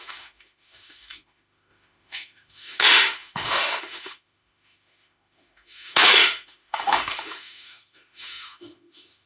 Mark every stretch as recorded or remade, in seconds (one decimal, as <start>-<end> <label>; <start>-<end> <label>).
0.0-9.3 remade